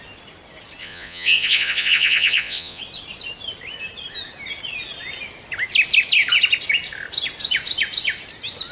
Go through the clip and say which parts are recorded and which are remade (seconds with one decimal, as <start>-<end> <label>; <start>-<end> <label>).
0.0-0.8 recorded; 0.8-2.8 remade; 2.8-8.7 recorded